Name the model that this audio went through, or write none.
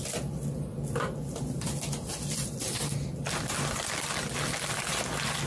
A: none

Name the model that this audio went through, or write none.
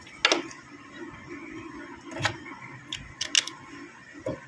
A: none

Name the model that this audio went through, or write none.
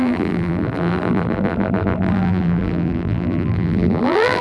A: vocoder, BigVGAN v2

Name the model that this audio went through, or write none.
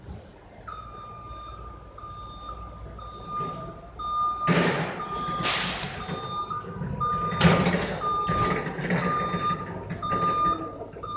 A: none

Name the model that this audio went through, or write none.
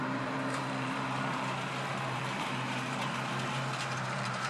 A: vocoder, BigVGAN v2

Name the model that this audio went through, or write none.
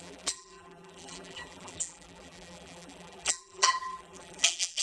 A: vocoder, BigVGAN v2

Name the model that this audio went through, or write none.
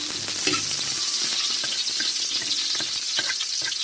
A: none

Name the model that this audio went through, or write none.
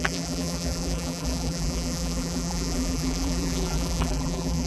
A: vocoder, BigVGAN v2